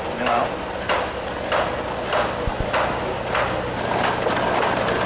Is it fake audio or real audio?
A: real